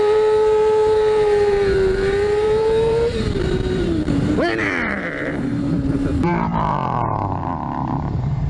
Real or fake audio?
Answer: fake